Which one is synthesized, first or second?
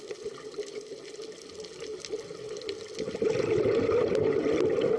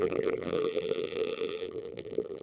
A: second